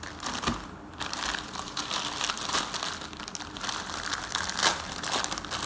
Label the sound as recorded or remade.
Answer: remade